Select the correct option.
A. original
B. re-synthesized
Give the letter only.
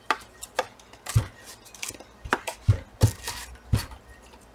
A